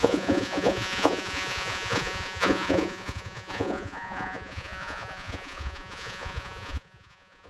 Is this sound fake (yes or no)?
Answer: yes